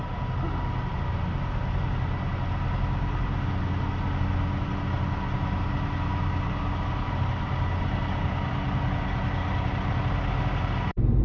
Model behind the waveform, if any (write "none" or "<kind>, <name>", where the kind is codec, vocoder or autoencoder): none